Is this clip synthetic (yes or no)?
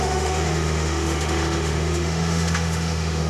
yes